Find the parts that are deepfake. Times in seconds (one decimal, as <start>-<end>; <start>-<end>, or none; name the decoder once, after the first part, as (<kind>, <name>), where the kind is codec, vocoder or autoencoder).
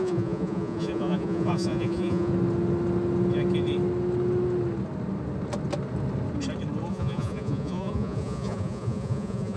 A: 0.0-2.3 (vocoder, Vocos); 6.9-9.6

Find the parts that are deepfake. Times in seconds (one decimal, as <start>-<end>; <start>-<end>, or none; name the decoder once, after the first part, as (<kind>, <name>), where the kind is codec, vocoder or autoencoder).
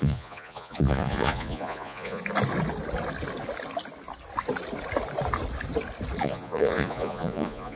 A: 0.0-2.2 (vocoder, Vocos); 6.2-7.8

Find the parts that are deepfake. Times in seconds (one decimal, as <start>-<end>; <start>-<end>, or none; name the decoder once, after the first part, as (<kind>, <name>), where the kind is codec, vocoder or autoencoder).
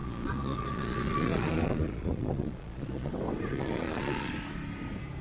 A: 0.0-3.1 (vocoder, Vocos); 3.5-4.3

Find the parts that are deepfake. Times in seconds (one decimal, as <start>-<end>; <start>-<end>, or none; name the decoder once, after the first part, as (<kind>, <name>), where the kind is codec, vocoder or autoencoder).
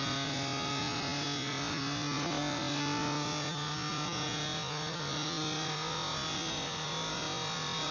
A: 3.9-4.4 (vocoder, Vocos)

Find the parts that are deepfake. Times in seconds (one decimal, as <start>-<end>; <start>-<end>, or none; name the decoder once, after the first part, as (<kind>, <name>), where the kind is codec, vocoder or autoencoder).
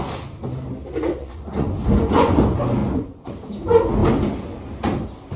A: 1.2-2.4 (vocoder, Vocos); 2.8-3.3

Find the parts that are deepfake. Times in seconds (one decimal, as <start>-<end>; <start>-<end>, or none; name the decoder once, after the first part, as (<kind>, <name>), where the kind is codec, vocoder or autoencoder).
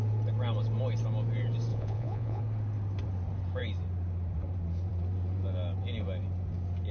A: 1.7-2.4 (vocoder, Vocos)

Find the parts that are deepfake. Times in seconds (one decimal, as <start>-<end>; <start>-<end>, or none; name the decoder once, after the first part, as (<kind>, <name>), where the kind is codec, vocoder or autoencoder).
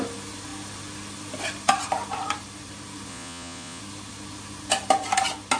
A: 3.1-3.8 (vocoder, Vocos)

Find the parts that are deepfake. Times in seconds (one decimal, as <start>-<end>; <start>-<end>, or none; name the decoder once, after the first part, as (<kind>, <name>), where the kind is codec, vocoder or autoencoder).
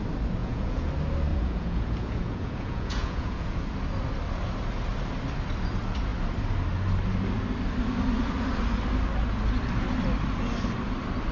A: 0.4-0.9 (vocoder, Vocos); 1.3-3.6